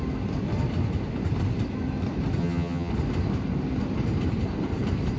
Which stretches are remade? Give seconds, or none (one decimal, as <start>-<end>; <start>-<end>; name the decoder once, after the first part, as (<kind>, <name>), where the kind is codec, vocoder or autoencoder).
2.4-2.9 (vocoder, HiFi-GAN)